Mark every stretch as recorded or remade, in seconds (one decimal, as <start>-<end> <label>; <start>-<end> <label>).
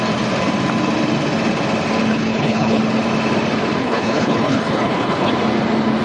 0.0-2.1 recorded; 2.1-2.8 remade; 2.8-3.8 recorded; 3.8-5.3 remade; 5.3-6.0 recorded